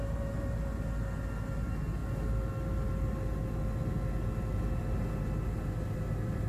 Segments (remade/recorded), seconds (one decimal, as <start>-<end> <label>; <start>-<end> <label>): 0.0-6.5 recorded